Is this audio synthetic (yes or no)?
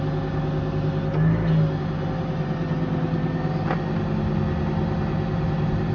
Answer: no